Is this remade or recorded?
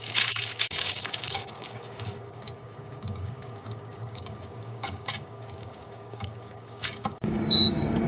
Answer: remade